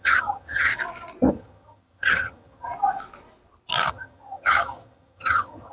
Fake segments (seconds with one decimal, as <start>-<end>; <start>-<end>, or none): 0.0-0.7; 1.3-2.7; 3.9-5.7